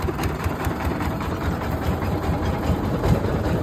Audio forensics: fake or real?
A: fake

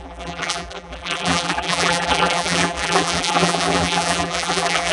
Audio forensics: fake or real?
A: fake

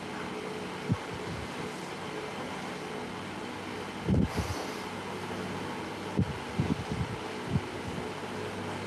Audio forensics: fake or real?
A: real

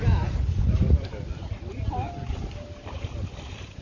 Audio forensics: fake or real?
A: fake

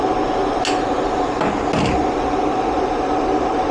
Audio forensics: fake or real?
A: real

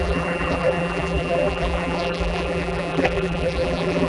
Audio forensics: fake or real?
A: fake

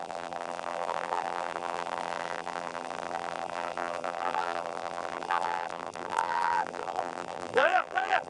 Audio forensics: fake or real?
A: fake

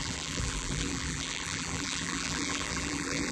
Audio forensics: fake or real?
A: fake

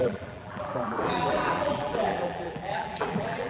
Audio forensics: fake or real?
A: fake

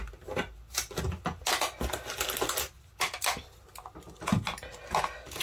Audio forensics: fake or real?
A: real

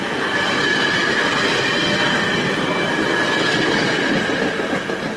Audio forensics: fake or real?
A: real